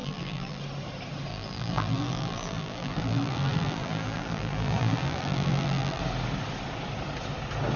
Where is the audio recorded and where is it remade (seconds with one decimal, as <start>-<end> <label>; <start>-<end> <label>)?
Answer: 0.0-0.6 remade; 0.6-1.3 recorded; 1.3-6.0 remade; 6.0-7.8 recorded